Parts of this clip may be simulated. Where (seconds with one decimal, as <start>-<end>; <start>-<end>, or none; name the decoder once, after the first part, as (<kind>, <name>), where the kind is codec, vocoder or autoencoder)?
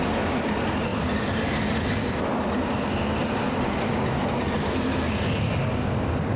none